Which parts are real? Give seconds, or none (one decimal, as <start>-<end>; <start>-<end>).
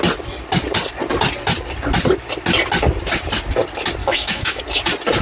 0.0-4.0; 4.6-5.2